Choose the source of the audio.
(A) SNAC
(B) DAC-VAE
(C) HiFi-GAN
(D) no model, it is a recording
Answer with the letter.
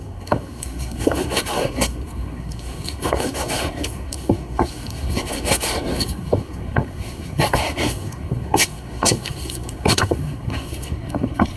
A